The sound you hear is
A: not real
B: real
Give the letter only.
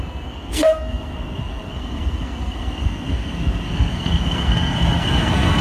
A